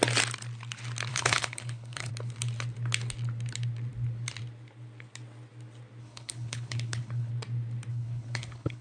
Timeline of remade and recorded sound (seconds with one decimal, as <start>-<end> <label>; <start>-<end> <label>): 0.0-1.1 recorded; 1.1-2.1 remade; 2.1-6.0 recorded; 6.0-7.3 remade; 7.3-7.9 recorded; 7.9-8.8 remade